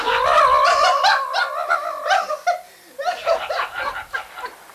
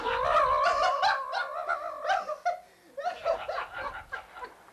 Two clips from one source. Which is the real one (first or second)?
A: second